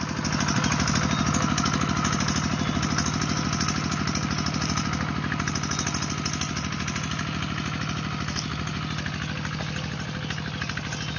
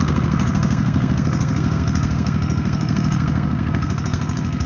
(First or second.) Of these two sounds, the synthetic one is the second